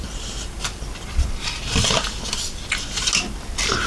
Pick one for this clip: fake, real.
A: real